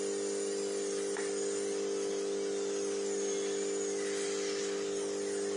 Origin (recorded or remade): recorded